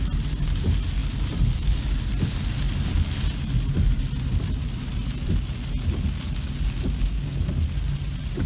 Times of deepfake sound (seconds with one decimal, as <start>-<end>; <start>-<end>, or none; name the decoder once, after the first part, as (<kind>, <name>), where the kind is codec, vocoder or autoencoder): none